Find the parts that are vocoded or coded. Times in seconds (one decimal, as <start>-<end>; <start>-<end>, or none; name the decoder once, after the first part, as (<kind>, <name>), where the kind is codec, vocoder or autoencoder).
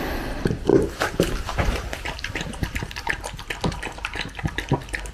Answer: 0.7-3.2 (vocoder, BigVGAN v2)